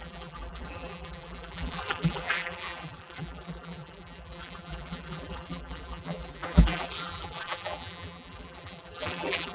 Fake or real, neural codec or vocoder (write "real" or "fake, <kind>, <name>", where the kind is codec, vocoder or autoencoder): fake, vocoder, BigVGAN v2